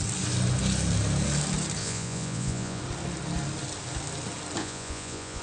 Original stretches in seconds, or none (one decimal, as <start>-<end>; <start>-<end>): 0.0-1.8; 2.8-4.6